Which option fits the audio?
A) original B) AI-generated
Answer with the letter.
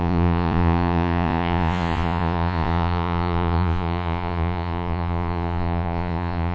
B